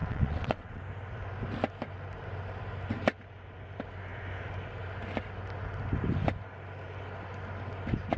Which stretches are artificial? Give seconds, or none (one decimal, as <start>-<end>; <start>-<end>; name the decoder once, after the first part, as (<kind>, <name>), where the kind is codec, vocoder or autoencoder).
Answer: 0.0-0.8 (vocoder, WaveNeXt)